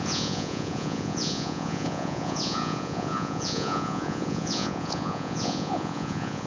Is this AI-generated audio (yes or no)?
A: yes